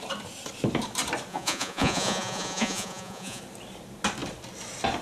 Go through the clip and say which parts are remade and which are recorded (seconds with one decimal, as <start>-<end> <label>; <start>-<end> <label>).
0.0-1.3 recorded; 1.3-3.4 remade; 3.4-5.0 recorded